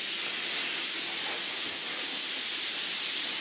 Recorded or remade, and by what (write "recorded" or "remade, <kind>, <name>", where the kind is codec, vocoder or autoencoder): recorded